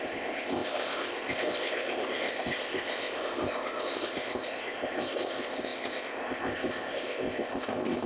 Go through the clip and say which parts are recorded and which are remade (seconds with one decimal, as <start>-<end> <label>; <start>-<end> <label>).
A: 0.0-8.1 remade